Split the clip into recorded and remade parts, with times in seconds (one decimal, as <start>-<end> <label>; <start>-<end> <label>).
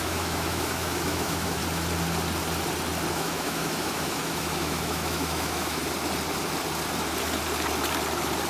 0.0-1.6 remade; 1.6-3.1 recorded; 3.1-5.8 remade; 5.8-8.5 recorded